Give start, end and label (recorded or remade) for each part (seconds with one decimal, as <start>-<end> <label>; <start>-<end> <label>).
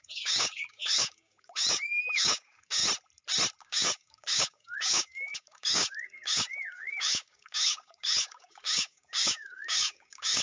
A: 0.0-2.8 remade; 2.8-3.6 recorded; 3.6-10.4 remade